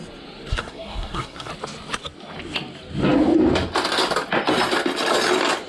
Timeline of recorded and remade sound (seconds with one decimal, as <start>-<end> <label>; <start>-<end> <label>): 0.0-0.5 recorded; 0.5-1.5 remade; 1.5-5.7 recorded